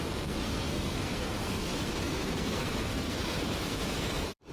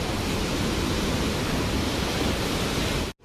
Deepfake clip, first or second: first